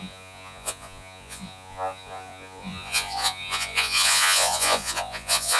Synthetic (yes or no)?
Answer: yes